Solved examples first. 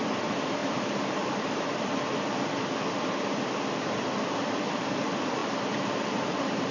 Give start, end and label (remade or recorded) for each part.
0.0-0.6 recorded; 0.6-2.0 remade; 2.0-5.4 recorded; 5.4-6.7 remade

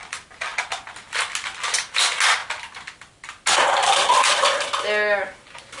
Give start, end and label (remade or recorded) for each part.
0.0-5.8 recorded

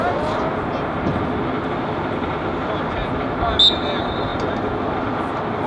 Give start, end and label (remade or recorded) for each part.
0.0-5.7 recorded

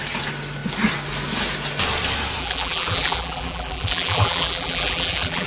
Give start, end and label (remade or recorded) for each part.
0.0-2.4 recorded; 2.4-5.5 remade

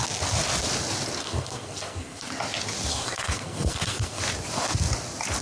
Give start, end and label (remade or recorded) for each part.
0.0-1.2 recorded; 1.2-2.3 remade; 2.3-2.9 recorded; 2.9-4.2 remade; 4.2-5.4 recorded

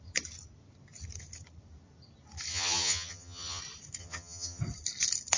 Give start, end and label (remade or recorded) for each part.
0.0-2.5 recorded; 2.5-3.6 remade; 3.6-4.0 recorded; 4.0-4.6 remade; 4.6-5.4 recorded